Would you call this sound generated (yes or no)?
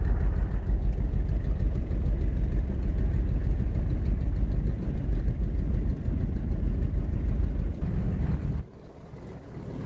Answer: yes